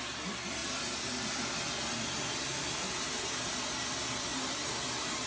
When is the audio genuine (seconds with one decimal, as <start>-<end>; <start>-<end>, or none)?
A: 0.0-5.3